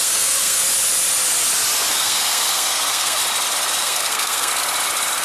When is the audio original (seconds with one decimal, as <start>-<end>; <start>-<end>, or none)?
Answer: 0.6-1.9; 3.2-3.8; 4.5-5.2